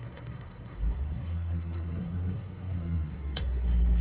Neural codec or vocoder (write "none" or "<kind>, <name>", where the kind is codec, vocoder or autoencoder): codec, SNAC